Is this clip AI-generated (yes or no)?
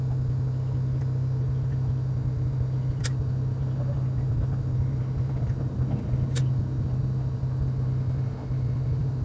no